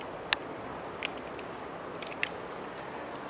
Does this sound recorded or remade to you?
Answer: recorded